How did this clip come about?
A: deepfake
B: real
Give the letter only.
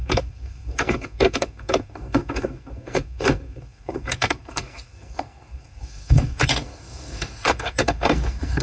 A